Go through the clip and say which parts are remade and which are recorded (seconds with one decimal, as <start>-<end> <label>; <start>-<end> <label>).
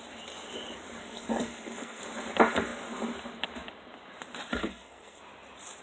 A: 0.0-1.0 recorded; 1.0-2.0 remade; 2.0-4.5 recorded; 4.5-5.2 remade; 5.2-5.8 recorded